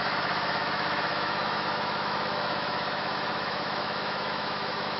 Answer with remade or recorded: remade